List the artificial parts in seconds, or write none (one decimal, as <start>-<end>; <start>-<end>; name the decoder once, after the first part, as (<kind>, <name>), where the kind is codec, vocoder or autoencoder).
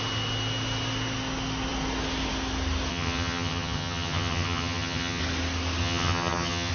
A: 2.9-5.2 (vocoder, HiFi-GAN); 5.8-6.7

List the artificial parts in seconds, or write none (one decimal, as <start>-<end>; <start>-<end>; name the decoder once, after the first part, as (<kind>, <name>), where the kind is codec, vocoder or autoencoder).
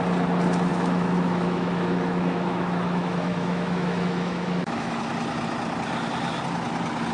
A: 0.7-5.0 (autoencoder, DAC-VAE)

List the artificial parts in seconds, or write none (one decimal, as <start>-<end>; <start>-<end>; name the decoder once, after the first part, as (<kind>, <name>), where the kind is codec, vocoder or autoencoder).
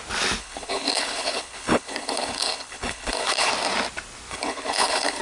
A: 0.4-3.5 (codec, HILCodec); 4.3-5.2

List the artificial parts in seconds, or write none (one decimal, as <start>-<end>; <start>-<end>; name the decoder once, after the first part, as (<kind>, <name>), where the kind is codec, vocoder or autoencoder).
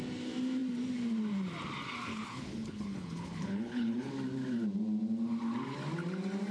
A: 2.1-4.1 (codec, HILCodec)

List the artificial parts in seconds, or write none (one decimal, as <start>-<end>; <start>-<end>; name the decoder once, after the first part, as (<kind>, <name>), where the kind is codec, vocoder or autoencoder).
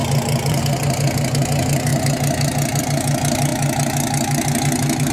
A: none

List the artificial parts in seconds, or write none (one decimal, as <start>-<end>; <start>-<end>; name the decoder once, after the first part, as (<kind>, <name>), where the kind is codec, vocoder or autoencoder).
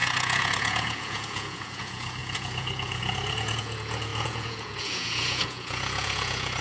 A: 0.0-6.6 (vocoder, Vocos)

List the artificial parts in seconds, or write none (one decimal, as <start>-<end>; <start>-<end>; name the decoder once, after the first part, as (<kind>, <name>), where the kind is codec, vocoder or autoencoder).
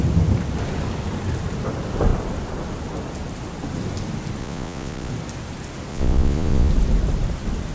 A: 4.4-5.1 (vocoder, Vocos); 5.9-6.7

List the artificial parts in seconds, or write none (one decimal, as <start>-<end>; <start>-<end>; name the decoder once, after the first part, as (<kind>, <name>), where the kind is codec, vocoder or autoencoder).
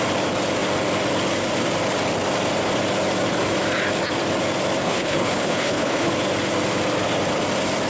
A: 4.8-6.1 (codec, HILCodec)